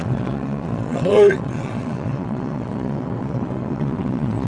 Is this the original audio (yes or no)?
no